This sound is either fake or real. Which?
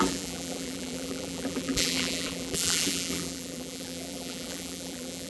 fake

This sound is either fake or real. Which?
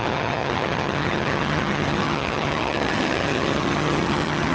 fake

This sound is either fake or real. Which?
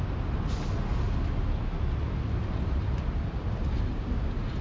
real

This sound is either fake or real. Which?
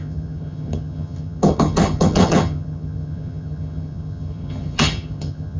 fake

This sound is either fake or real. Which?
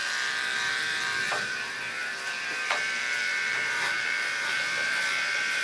fake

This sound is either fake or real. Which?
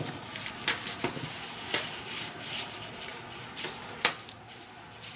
real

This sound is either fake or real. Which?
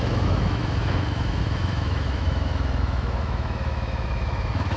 fake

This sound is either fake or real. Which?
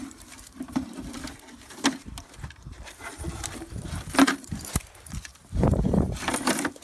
fake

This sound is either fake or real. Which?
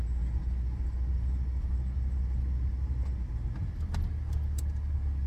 real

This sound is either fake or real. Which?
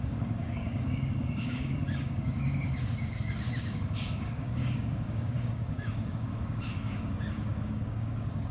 fake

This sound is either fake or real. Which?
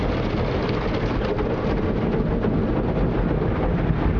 real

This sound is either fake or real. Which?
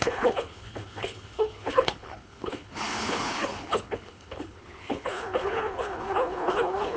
fake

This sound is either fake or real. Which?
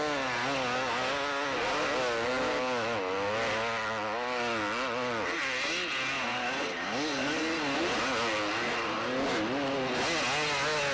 real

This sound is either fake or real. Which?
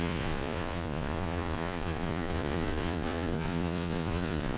fake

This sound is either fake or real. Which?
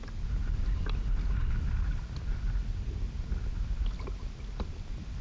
real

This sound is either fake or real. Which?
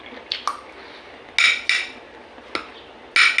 real